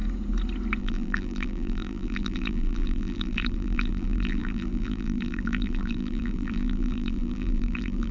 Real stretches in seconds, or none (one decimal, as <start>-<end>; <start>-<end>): 0.0-0.8